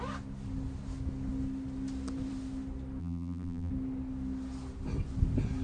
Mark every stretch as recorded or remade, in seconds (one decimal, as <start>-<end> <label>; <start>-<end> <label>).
0.0-3.0 recorded; 3.0-3.7 remade; 3.7-5.6 recorded